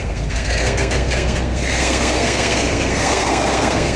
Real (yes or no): no